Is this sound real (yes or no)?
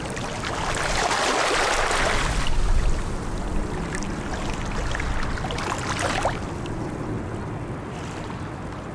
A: yes